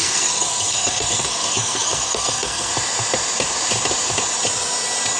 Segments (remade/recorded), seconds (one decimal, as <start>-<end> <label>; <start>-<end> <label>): 0.0-2.7 remade; 2.7-5.2 recorded